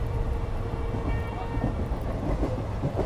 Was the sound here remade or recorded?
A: remade